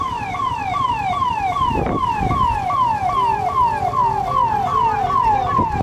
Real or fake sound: real